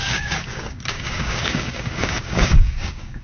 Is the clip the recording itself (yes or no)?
no